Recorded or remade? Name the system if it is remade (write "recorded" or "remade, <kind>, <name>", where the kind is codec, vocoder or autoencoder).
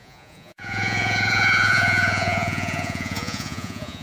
remade, vocoder, Vocos